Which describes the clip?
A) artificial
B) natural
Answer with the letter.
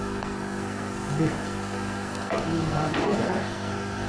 A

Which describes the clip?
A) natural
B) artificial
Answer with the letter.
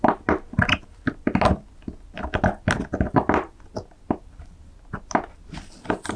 A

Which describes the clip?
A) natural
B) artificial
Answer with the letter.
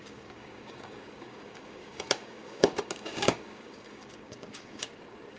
B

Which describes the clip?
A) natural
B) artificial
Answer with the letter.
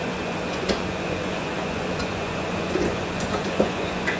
B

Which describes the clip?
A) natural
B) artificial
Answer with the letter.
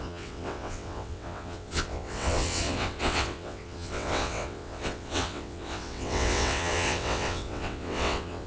B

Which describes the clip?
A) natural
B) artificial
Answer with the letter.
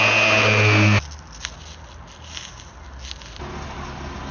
A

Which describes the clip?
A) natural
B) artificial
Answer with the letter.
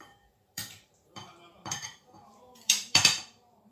B